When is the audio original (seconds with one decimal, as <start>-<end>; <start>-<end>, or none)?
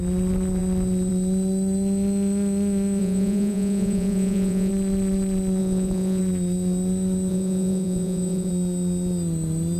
0.0-3.0; 4.7-5.6; 6.2-7.3; 8.5-9.8